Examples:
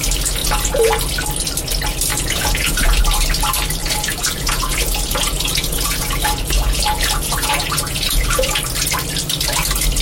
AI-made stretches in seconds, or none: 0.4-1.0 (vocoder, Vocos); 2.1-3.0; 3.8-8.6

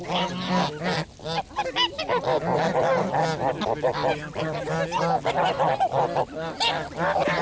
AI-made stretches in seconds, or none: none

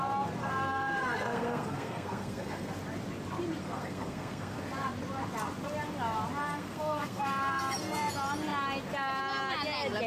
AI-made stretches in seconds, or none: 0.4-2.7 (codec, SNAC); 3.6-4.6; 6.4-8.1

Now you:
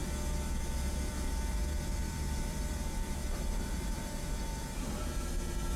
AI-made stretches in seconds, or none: 1.9-5.0 (vocoder, BigVGAN v2)